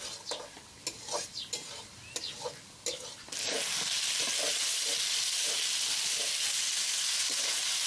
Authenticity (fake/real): real